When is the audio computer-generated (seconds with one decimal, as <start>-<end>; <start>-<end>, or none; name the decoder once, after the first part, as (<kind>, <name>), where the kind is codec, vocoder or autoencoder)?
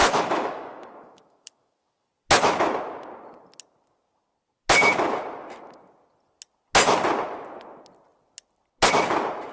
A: 0.0-2.1 (autoencoder, DAC-VAE)